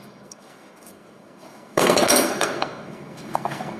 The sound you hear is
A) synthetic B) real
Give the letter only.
A